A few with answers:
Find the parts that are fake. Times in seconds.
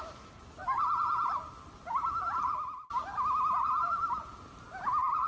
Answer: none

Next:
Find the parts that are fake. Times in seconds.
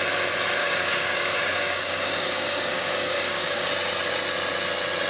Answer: 0.6-3.7 (codec, DAC)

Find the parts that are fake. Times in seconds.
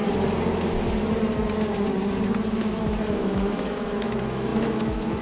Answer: 3.1-5.2 (autoencoder, DAC-VAE)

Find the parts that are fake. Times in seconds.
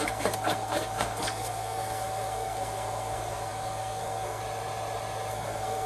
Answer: 0.0-4.4 (codec, SNAC); 5.3-5.9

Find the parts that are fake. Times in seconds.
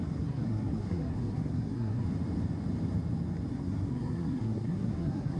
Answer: 0.0-2.1 (codec, SNAC); 3.5-5.4